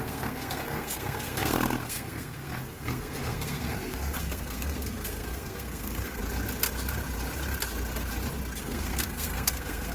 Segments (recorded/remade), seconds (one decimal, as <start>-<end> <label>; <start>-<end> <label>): 0.0-6.2 remade; 6.2-8.6 recorded; 8.6-9.9 remade